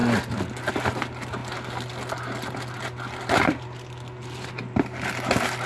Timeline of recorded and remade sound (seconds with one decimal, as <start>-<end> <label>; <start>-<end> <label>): 0.0-5.7 recorded